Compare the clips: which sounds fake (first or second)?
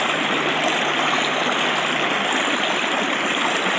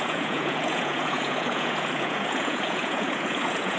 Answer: second